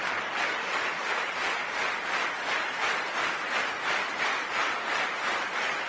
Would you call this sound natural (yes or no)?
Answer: yes